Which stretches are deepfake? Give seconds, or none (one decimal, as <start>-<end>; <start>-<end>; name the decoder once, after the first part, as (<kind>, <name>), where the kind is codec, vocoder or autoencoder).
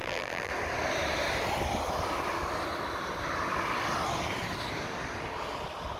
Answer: 0.0-0.5 (vocoder, BigVGAN v2)